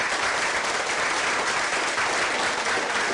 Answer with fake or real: real